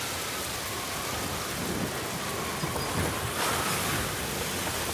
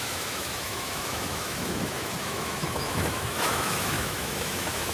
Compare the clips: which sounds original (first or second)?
first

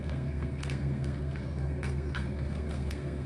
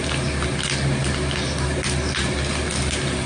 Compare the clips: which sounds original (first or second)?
second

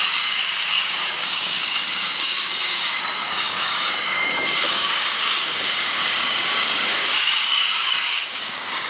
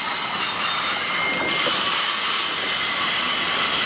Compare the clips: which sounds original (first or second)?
second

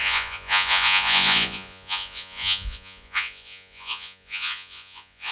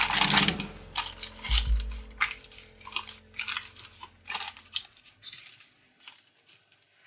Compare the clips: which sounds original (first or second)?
second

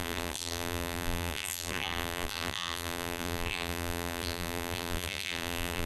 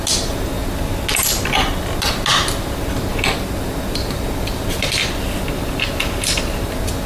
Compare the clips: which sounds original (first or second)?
second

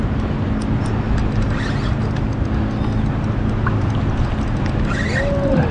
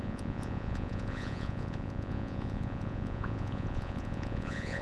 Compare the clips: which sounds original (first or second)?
first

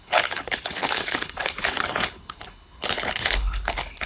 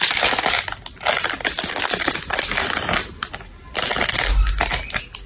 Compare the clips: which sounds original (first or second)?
second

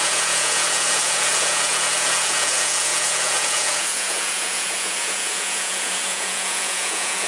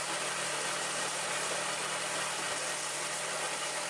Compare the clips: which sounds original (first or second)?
second